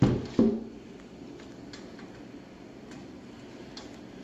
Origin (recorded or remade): recorded